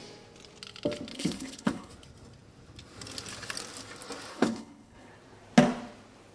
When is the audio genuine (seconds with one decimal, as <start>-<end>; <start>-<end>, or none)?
0.0-1.1; 1.9-4.3; 5.1-6.3